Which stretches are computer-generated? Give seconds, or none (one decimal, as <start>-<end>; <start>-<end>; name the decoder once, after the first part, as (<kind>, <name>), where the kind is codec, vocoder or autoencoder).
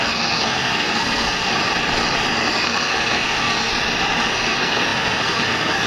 0.0-1.5 (codec, SNAC); 2.5-3.7; 4.3-5.9